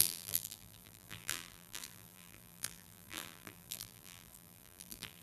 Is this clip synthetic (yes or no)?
yes